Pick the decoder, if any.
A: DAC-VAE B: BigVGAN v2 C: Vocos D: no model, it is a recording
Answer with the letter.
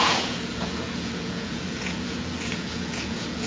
C